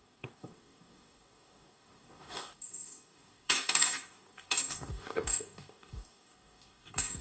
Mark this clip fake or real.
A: fake